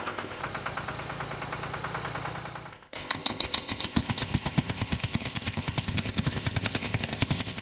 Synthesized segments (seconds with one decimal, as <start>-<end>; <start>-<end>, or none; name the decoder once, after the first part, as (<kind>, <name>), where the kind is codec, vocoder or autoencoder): 0.0-0.4 (codec, ZipCodec); 2.7-7.6